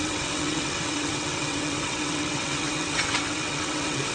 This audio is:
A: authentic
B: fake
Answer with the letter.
B